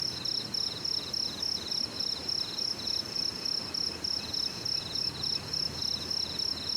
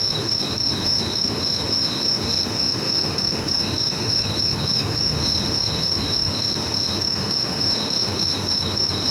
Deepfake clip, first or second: second